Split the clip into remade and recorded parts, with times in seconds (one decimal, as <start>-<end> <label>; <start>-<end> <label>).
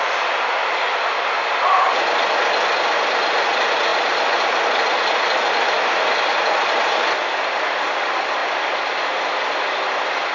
0.0-10.3 recorded